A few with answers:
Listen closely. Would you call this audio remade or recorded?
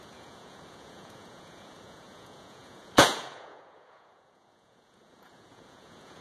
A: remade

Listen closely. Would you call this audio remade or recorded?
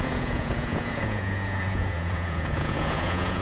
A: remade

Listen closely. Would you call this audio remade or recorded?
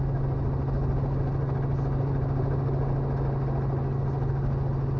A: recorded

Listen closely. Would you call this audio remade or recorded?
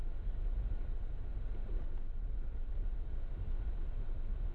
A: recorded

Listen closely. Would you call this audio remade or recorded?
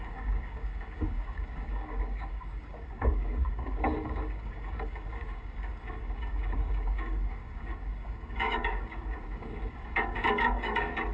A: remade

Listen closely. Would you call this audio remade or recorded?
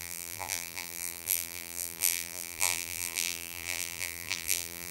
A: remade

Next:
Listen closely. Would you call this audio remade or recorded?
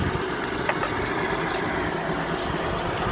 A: recorded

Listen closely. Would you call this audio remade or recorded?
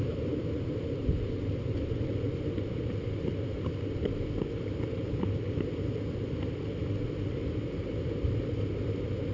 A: recorded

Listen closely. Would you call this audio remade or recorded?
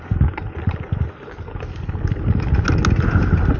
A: recorded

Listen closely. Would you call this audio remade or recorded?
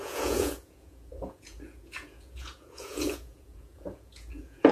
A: remade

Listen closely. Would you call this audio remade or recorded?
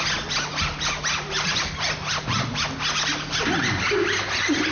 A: recorded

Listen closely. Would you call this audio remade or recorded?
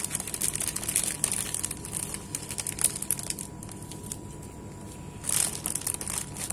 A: recorded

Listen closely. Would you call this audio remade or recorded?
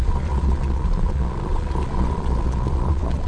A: remade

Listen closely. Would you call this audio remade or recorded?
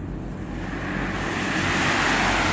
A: recorded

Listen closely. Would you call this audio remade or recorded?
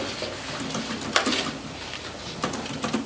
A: recorded